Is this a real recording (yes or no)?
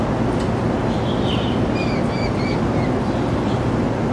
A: yes